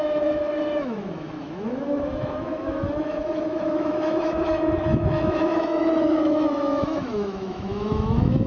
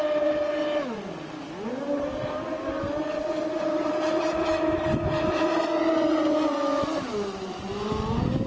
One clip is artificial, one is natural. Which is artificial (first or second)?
first